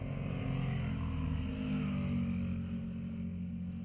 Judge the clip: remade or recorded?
recorded